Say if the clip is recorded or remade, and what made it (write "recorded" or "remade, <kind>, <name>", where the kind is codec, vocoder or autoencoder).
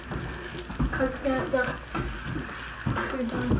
recorded